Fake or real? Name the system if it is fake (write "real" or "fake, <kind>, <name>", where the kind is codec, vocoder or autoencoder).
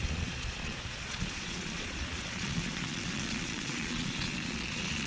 fake, vocoder, Vocos